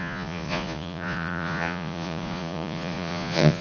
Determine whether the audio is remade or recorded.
remade